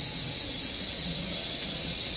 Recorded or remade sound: remade